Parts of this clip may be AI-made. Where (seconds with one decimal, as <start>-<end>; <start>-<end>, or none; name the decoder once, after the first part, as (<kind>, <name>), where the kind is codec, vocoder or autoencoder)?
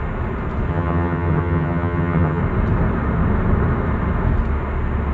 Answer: 0.7-2.4 (vocoder, HiFi-GAN)